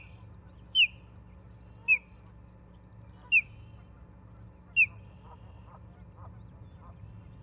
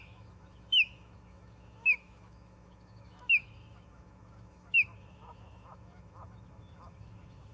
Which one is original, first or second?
first